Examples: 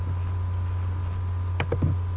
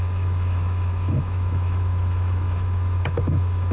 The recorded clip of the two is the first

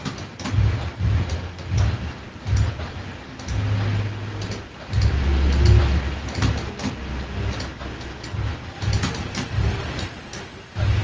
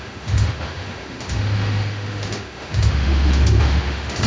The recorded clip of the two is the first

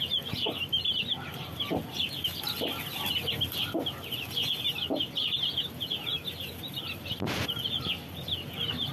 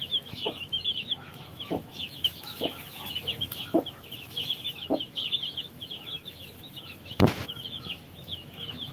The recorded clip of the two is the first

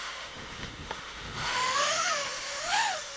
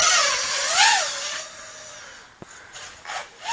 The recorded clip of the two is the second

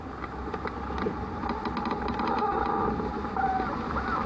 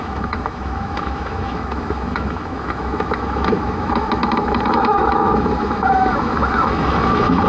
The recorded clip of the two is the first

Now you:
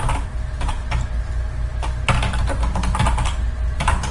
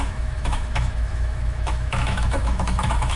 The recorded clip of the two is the first